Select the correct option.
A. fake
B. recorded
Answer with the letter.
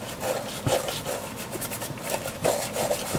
B